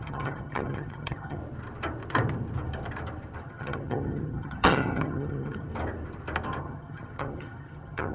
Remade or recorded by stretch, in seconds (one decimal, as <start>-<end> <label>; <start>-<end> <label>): 0.0-1.4 remade; 1.4-3.4 recorded; 3.4-5.7 remade; 5.7-6.6 recorded; 6.6-8.1 remade